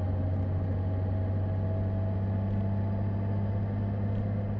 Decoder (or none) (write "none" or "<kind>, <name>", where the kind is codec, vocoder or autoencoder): none